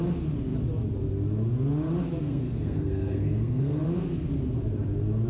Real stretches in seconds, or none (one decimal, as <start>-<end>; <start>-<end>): 0.0-2.2; 3.8-5.3